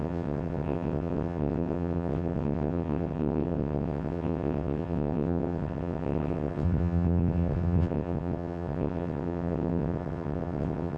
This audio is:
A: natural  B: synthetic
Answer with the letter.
B